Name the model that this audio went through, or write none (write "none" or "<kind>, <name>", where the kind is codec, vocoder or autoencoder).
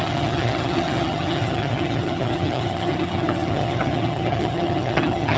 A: vocoder, HiFi-GAN